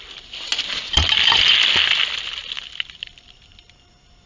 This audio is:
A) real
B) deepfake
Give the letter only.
A